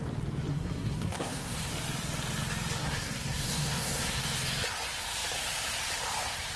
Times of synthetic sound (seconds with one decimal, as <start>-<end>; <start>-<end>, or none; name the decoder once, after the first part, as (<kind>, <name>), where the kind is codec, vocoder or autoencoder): 0.5-1.7 (codec, SNAC); 2.8-4.2